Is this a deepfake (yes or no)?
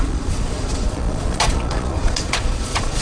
yes